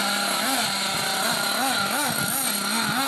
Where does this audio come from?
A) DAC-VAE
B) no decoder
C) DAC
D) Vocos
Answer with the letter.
B